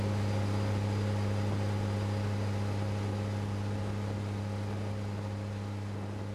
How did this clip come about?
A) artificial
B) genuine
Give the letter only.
B